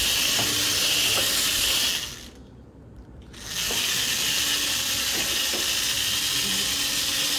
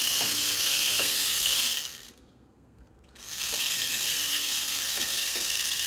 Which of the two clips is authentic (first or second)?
first